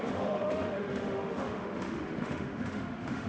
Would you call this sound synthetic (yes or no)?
yes